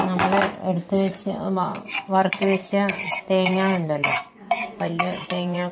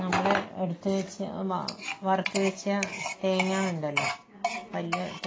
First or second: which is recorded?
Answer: second